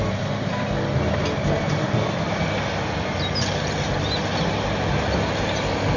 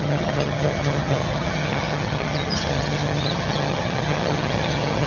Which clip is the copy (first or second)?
second